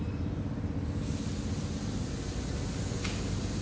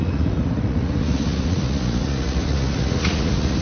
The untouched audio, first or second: first